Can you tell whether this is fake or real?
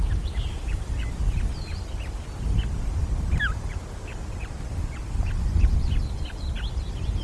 real